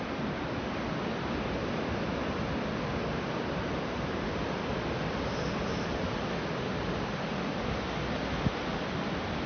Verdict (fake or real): real